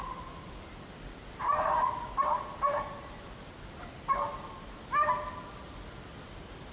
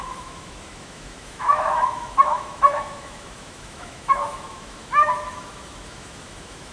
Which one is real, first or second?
first